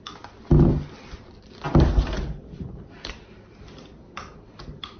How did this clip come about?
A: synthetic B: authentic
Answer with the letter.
B